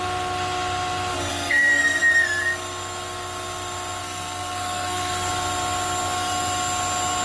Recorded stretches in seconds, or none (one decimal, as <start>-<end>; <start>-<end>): 0.0-1.3; 2.0-4.0; 5.3-7.2